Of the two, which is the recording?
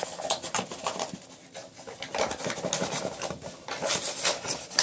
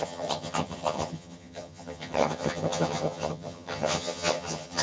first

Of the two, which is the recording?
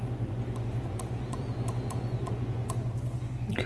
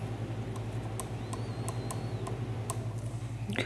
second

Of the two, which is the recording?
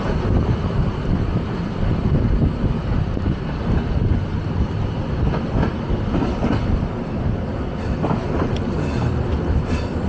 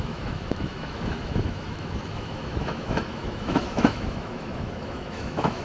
first